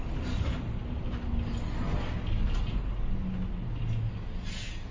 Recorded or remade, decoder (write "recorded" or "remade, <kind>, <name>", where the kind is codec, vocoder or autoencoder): recorded